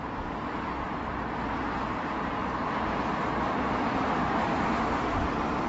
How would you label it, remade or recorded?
remade